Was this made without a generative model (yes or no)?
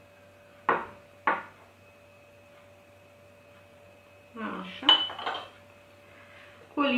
yes